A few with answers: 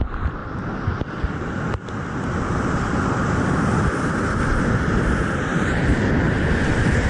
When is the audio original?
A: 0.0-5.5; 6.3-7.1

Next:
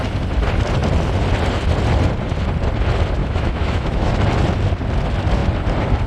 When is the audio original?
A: 0.0-3.2; 4.1-6.1

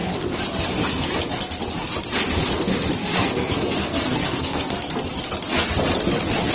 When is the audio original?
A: 0.0-3.0; 4.9-6.5

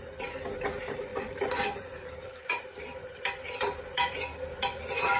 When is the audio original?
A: 0.0-1.1; 3.2-5.2

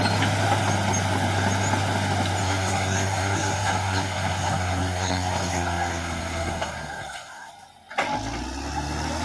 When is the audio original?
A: 0.0-2.4; 7.5-9.2

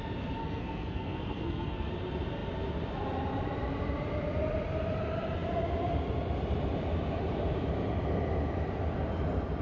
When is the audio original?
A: 0.0-0.4; 1.9-9.6

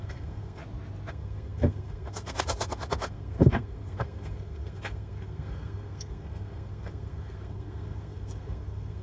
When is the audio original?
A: 0.6-1.1